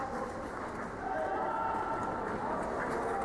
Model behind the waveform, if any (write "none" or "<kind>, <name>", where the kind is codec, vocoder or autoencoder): none